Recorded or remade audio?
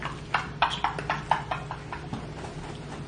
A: recorded